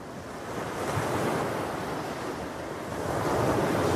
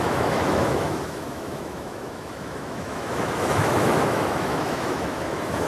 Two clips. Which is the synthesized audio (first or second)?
second